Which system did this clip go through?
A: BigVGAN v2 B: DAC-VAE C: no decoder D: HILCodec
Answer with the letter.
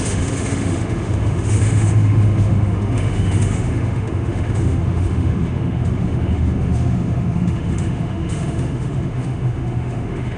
B